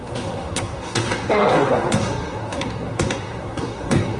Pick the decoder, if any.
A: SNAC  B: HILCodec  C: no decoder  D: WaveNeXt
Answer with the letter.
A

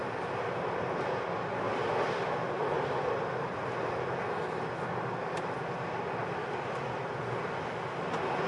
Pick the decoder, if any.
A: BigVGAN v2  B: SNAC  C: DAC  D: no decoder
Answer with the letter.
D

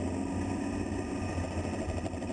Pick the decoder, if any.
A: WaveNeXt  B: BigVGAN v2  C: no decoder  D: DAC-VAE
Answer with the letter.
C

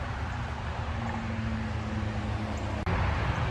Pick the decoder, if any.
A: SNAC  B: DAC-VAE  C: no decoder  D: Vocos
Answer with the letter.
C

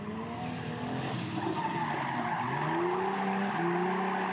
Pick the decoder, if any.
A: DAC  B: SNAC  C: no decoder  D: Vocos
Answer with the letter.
C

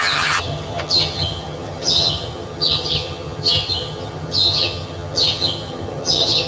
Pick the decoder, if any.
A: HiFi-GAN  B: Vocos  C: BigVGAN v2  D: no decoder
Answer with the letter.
A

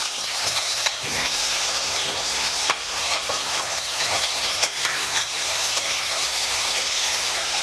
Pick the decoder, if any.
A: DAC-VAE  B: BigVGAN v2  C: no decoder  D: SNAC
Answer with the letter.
D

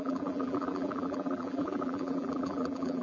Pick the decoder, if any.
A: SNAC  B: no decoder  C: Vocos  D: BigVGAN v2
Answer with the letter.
D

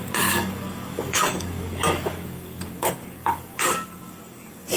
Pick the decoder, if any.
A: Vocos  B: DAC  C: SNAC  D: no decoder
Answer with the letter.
B